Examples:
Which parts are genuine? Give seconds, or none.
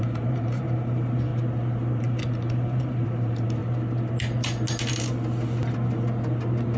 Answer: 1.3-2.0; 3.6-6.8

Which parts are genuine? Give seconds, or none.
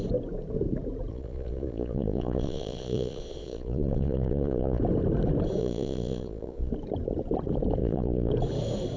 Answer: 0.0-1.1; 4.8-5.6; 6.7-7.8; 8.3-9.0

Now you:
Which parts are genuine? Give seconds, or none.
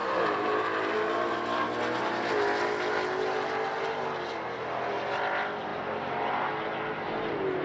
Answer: 0.0-5.7; 6.5-7.6